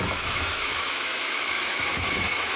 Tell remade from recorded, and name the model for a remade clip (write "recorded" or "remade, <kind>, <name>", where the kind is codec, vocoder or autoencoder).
remade, autoencoder, DAC-VAE